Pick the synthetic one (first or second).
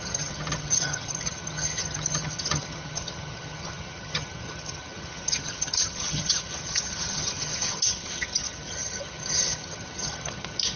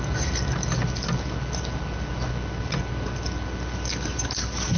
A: first